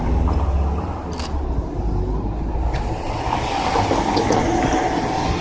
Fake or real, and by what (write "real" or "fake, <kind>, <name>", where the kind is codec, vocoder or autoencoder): real